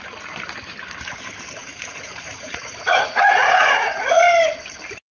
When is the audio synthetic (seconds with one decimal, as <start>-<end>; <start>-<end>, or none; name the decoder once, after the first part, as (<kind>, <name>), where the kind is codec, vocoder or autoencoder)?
1.6-4.2 (vocoder, Vocos)